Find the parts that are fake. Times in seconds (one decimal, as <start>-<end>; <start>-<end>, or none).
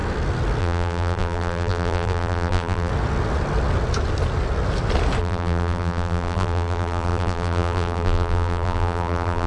0.6-2.9; 5.2-9.5